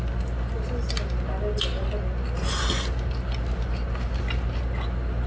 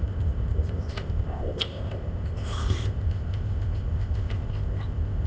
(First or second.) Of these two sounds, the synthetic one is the second